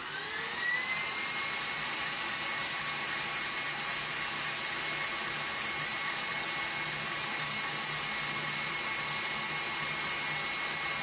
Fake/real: real